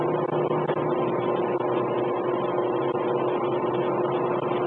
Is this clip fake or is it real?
real